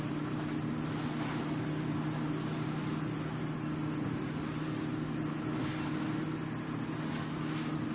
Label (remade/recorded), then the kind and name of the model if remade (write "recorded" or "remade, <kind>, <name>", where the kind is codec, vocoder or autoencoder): recorded